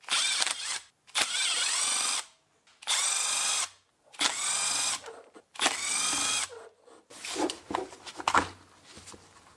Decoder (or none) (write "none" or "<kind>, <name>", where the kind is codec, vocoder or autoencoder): none